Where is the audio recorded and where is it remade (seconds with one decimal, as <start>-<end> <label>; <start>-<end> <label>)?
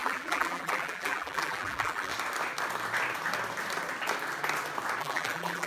0.0-2.1 remade; 2.1-5.0 recorded; 5.0-5.7 remade